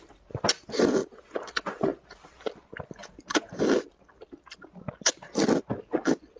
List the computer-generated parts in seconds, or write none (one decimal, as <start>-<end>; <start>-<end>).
none